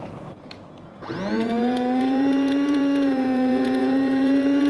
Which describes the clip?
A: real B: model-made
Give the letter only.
B